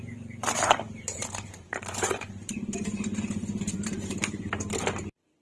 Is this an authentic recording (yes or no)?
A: no